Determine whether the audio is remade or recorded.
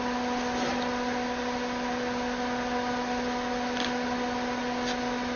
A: recorded